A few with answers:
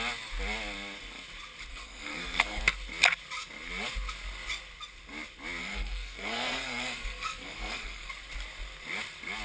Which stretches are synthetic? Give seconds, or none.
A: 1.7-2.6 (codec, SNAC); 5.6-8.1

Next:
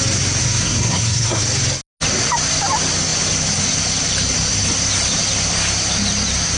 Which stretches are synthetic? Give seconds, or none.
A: 0.4-1.4 (codec, SNAC)